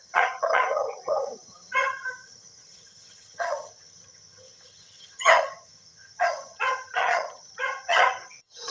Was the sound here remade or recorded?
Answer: remade